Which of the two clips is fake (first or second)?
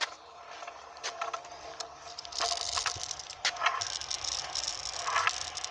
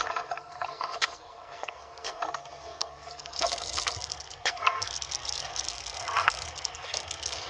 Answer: second